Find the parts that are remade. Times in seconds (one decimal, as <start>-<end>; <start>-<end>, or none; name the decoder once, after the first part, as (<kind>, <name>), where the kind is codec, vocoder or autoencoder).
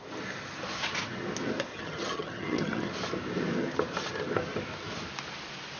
1.7-2.9 (vocoder, HiFi-GAN)